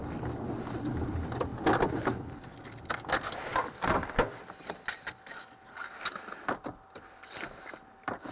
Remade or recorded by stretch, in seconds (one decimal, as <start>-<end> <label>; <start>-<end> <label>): 0.0-8.3 recorded